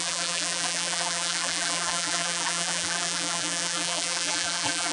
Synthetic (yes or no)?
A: yes